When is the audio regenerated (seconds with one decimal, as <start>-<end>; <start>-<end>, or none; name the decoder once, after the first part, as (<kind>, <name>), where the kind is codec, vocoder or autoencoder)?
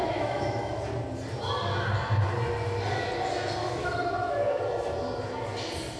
0.0-0.8 (autoencoder, DAC-VAE); 3.6-4.6